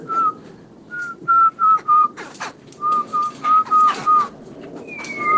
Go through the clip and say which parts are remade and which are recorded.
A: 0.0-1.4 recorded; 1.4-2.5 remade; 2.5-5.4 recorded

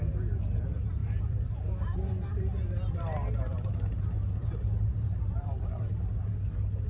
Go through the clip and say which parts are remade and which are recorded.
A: 0.0-1.0 recorded; 1.0-3.7 remade; 3.7-4.4 recorded; 4.4-6.0 remade; 6.0-6.9 recorded

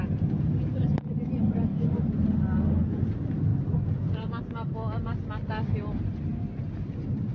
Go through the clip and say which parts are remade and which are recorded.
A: 0.0-7.3 recorded

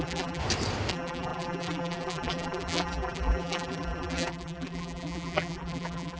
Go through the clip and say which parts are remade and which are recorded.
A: 0.0-0.4 remade; 0.4-0.9 recorded; 0.9-6.2 remade

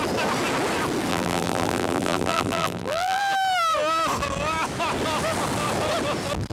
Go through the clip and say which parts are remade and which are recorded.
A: 0.0-1.1 recorded; 1.1-3.2 remade; 3.2-6.5 recorded

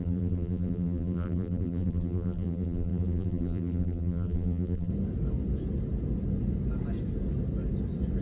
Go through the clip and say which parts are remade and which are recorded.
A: 0.0-4.9 remade; 4.9-8.2 recorded